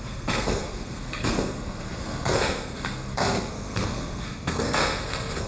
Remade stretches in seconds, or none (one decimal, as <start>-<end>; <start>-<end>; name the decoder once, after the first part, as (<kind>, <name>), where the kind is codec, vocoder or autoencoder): 0.0-5.5 (codec, SNAC)